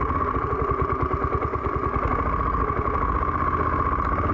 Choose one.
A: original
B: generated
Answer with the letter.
A